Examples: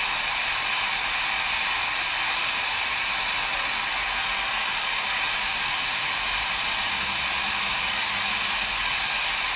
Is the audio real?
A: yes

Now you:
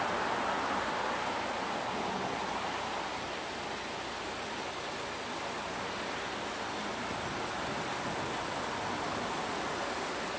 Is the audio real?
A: yes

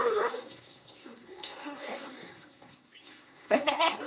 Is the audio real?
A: no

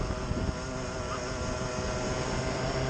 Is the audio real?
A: yes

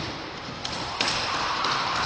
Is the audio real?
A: no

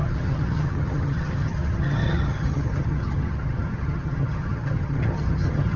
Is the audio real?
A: no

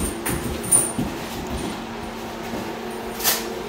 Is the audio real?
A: yes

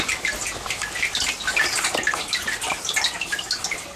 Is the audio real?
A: yes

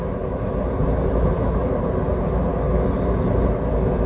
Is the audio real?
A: yes